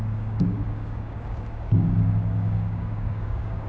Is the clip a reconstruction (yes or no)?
yes